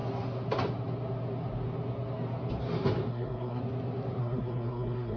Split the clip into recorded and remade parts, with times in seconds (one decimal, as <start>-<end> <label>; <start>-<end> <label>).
0.0-3.1 recorded; 3.1-3.6 remade; 3.6-4.2 recorded; 4.2-5.2 remade

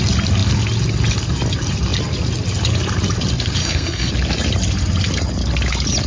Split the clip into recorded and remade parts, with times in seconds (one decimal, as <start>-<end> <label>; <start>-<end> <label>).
0.0-3.6 recorded; 3.6-4.1 remade; 4.1-6.1 recorded

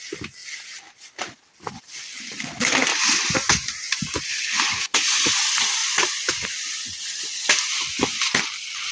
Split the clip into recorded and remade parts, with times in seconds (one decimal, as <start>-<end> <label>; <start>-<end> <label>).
0.0-8.9 recorded

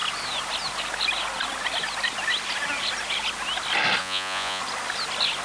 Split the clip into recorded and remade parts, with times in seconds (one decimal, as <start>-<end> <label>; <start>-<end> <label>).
0.0-4.0 recorded; 4.0-4.6 remade; 4.6-5.4 recorded

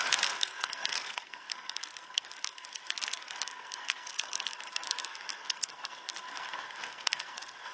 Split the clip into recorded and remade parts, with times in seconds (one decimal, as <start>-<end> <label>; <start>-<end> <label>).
0.0-7.7 remade